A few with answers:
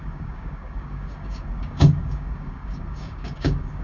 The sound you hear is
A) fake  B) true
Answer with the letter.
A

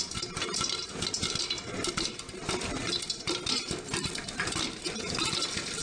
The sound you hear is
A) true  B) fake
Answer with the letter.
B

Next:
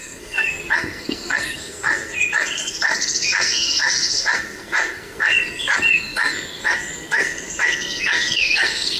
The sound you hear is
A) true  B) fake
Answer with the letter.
B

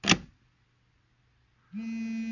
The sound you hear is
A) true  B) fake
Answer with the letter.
A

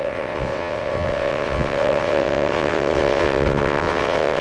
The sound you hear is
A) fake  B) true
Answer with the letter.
A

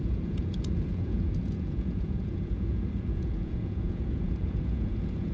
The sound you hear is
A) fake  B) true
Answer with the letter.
A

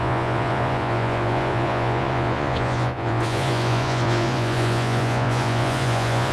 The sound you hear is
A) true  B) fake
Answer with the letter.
B